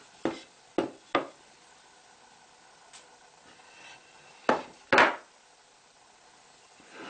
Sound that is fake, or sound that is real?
real